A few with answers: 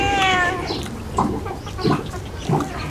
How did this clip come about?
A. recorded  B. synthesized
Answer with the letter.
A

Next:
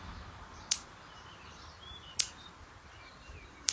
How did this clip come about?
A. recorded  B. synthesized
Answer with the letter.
B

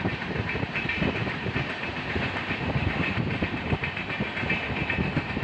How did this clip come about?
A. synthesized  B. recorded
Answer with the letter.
A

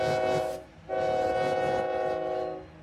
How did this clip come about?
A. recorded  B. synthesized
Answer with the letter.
A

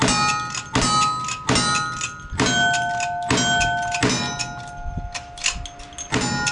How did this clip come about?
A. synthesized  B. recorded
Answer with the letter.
B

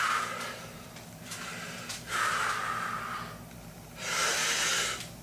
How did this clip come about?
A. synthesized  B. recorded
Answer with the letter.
A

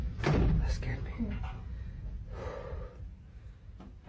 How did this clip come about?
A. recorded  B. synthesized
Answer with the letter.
A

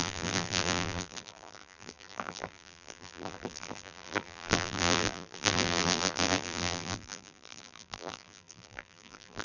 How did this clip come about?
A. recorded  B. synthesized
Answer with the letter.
B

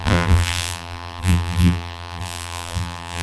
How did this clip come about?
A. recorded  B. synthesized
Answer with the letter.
B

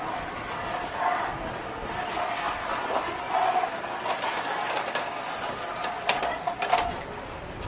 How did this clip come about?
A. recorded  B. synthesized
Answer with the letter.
A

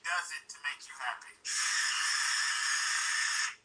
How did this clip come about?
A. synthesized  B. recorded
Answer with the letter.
B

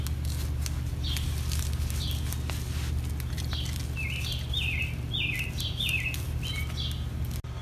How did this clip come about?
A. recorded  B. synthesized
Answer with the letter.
A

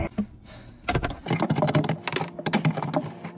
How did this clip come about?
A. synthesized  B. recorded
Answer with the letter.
B